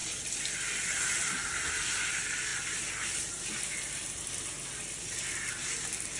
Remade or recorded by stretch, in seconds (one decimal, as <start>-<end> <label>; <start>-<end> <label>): 0.0-6.2 recorded